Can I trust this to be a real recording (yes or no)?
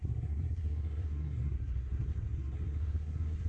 no